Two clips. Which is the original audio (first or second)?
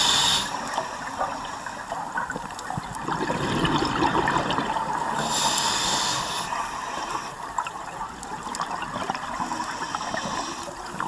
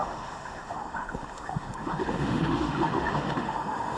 first